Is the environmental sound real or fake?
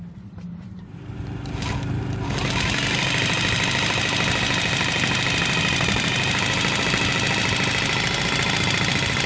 real